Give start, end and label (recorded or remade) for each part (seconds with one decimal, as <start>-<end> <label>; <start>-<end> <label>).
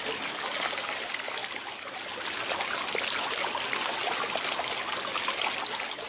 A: 0.0-6.1 recorded